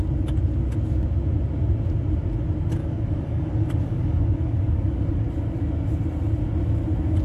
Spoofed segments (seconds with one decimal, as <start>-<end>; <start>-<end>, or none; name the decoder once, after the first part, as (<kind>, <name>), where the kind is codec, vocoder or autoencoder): 2.8-5.2 (codec, DAC)